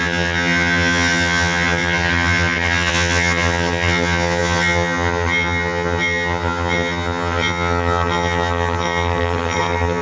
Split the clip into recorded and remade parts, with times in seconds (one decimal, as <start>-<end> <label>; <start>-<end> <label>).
0.0-10.0 remade